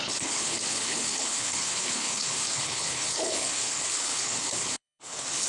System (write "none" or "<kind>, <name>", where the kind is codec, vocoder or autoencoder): codec, HILCodec